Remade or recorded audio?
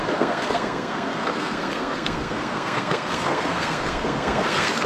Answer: remade